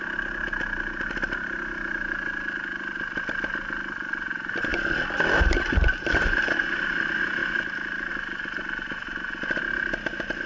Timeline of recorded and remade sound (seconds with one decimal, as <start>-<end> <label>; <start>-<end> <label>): 0.0-10.5 recorded

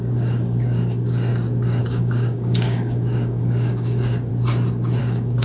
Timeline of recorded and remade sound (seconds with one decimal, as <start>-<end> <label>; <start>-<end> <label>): 0.0-1.3 remade; 1.3-1.8 recorded; 1.8-4.3 remade; 4.3-5.0 recorded; 5.0-5.4 remade

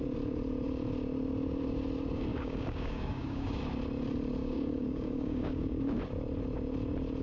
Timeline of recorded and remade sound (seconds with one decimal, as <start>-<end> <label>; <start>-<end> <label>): 0.0-2.3 recorded; 2.3-3.6 remade; 3.6-4.4 recorded; 4.4-6.0 remade; 6.0-7.2 recorded

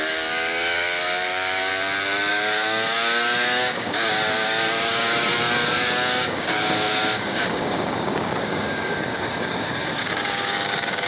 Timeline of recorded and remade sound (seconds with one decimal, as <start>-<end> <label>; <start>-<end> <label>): 0.0-1.7 remade; 1.7-2.3 recorded; 2.3-11.1 remade

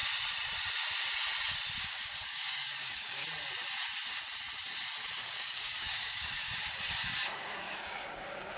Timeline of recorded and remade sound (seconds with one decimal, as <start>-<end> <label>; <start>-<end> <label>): 0.0-1.8 recorded; 1.8-3.2 remade; 3.2-5.2 recorded; 5.2-8.6 remade

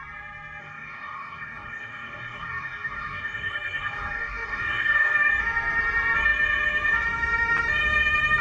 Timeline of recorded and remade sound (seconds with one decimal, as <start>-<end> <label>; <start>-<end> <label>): 0.0-0.6 recorded; 0.6-5.3 remade; 5.3-8.4 recorded